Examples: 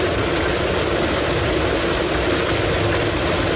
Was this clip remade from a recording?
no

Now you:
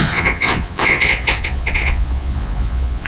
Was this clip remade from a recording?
yes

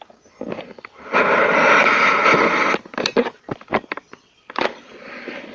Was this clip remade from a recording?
no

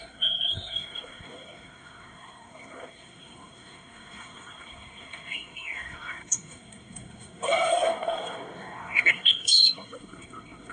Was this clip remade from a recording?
yes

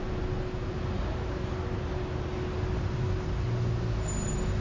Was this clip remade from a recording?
no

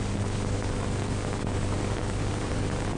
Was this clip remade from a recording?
yes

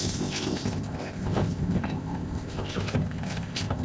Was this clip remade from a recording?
yes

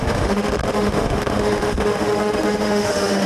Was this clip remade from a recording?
yes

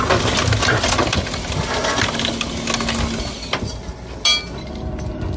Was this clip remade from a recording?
no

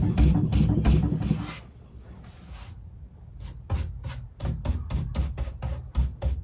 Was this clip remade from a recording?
no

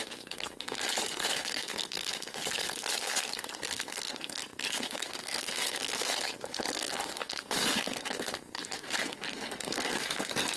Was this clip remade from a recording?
yes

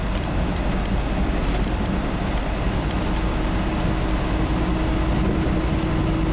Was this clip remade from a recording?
no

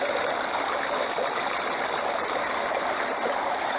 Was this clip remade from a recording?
no